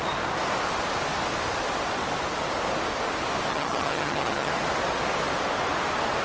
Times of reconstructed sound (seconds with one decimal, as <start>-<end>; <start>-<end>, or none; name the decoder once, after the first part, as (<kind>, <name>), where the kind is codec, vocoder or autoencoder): 3.5-4.5 (vocoder, HiFi-GAN)